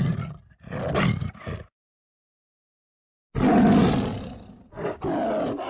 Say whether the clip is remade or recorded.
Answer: recorded